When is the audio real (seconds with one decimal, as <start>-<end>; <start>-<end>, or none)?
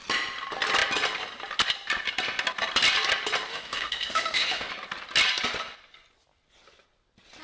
0.0-3.5; 4.7-7.4